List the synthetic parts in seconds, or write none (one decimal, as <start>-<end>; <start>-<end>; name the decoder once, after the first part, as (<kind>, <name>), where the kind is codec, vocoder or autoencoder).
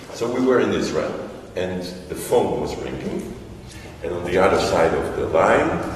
none